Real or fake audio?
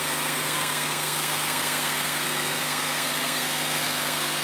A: fake